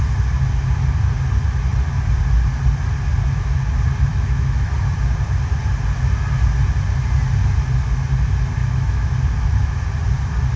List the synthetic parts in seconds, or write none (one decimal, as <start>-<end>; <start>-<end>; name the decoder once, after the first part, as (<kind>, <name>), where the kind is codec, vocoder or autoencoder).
4.1-4.7 (autoencoder, DAC-VAE); 8.6-9.1